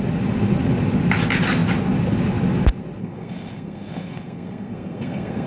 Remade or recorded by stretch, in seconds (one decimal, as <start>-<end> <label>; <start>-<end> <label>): 0.0-3.0 recorded; 3.0-5.5 remade